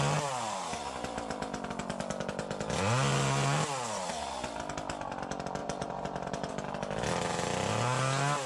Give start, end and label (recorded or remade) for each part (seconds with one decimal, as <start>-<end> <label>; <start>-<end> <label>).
0.0-5.6 recorded; 5.6-6.5 remade; 6.5-8.5 recorded